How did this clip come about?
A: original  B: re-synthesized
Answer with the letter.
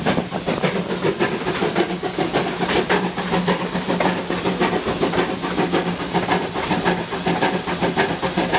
A